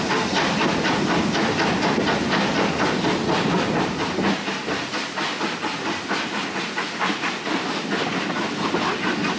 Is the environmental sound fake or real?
real